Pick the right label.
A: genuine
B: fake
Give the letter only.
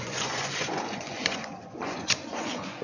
B